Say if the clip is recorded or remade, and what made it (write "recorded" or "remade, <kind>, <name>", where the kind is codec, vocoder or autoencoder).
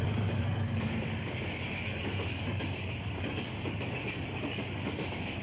remade, codec, DAC